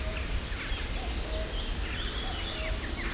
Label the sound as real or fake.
real